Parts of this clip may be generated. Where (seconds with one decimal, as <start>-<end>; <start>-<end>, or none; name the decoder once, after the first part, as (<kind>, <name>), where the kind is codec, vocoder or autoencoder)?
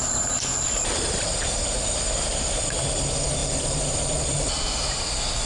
0.0-0.9 (vocoder, BigVGAN v2); 3.4-4.5